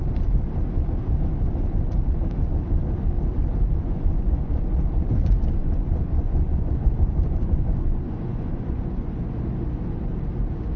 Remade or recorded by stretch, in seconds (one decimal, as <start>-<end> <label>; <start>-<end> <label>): 0.0-3.8 recorded; 3.8-4.5 remade; 4.5-5.6 recorded; 5.6-9.2 remade; 9.2-10.8 recorded